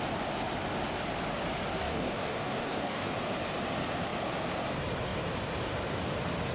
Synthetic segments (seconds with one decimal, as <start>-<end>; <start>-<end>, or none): 1.8-3.1